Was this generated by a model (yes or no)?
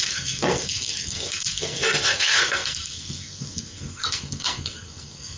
yes